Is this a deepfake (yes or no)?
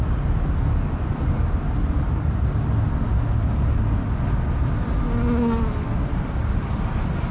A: no